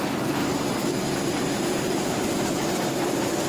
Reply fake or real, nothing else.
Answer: real